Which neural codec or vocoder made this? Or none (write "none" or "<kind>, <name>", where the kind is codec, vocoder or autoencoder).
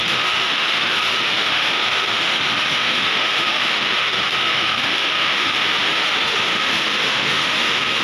autoencoder, DAC-VAE